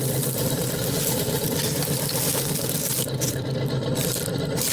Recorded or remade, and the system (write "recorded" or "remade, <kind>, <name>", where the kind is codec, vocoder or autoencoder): recorded